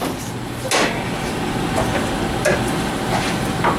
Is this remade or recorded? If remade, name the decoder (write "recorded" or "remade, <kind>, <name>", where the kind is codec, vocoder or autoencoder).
recorded